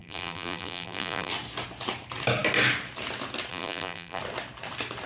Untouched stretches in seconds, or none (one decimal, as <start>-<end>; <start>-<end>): 1.3-3.5; 4.2-5.1

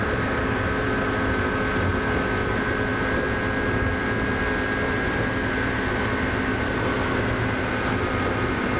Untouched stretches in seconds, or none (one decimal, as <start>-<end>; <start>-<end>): 0.0-8.8